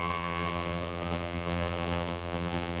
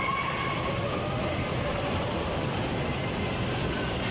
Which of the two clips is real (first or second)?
second